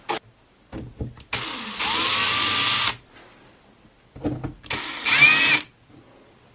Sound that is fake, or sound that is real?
real